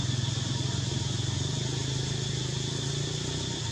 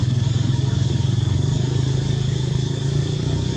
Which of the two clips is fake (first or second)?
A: second